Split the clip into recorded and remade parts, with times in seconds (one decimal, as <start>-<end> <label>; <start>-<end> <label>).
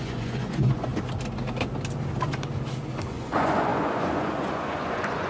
0.0-0.9 remade; 0.9-3.1 recorded; 3.1-5.3 remade